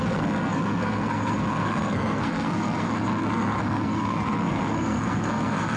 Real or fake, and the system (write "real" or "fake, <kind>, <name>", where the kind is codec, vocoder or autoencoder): fake, codec, SNAC